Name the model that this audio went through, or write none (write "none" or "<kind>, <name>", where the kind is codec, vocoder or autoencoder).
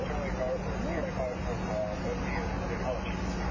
none